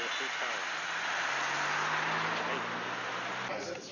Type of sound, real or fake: real